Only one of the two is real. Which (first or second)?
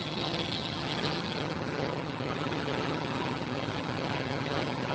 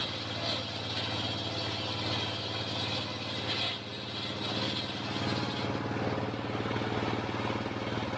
second